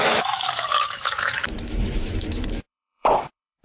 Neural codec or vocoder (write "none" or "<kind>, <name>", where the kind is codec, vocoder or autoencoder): autoencoder, DAC-VAE